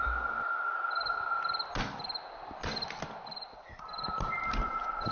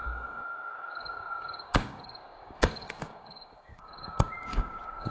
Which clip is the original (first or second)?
first